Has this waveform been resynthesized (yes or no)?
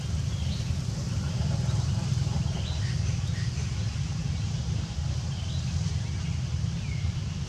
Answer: yes